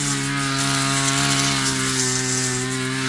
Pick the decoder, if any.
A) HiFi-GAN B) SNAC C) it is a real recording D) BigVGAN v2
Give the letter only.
C